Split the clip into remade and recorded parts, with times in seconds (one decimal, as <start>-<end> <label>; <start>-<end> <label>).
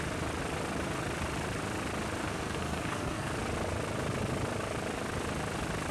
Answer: 0.0-2.2 recorded; 2.2-3.3 remade; 3.3-5.9 recorded